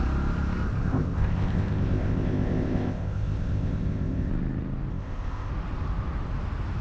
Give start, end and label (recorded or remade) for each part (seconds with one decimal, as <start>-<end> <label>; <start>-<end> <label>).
0.0-0.8 recorded; 0.8-4.3 remade; 4.3-4.9 recorded; 4.9-5.5 remade; 5.5-6.8 recorded